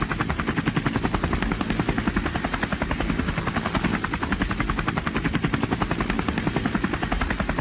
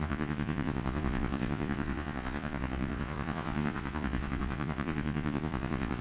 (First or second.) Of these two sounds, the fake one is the second